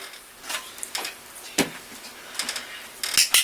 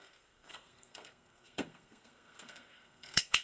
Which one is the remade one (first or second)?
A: second